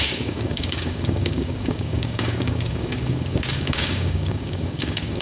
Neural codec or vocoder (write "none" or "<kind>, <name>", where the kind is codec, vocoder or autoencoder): codec, DAC